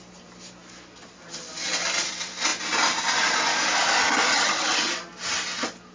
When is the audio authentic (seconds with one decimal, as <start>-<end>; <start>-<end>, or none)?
0.0-4.3; 4.9-5.9